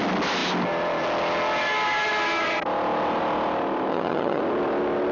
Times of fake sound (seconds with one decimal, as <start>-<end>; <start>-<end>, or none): 3.9-4.4